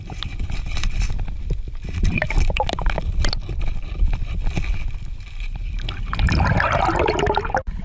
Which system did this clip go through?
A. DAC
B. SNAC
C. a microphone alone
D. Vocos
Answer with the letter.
C